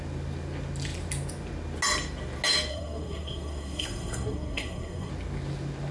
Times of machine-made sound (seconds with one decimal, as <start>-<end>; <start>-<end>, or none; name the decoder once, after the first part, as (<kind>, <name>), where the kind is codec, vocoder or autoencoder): 2.7-5.1 (codec, SNAC)

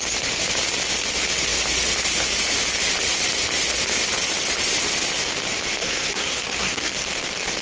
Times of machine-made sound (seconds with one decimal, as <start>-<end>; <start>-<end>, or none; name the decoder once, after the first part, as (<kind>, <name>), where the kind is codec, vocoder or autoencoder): 5.8-6.9 (codec, SNAC)

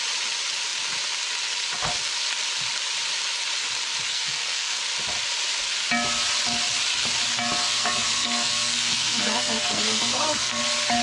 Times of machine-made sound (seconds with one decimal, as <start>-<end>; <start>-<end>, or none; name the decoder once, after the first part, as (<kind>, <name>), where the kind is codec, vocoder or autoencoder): 4.1-4.8 (codec, SNAC); 7.6-10.6

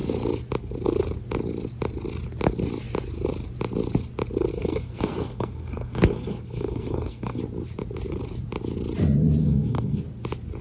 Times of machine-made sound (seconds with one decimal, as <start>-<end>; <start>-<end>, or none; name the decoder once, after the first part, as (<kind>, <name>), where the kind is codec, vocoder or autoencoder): 4.5-7.4 (codec, SNAC); 9.4-10.0

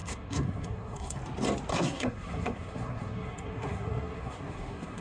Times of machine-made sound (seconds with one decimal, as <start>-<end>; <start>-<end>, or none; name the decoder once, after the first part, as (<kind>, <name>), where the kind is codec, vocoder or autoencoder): 0.0-1.2 (codec, SNAC); 1.7-5.0

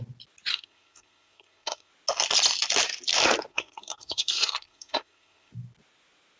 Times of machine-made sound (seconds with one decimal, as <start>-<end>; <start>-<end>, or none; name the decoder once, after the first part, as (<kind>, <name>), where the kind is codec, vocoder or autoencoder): 0.5-1.9 (codec, SNAC); 3.5-5.5

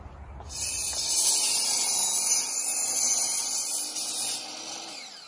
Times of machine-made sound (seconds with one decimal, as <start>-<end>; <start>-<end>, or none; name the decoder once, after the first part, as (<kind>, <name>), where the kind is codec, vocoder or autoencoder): none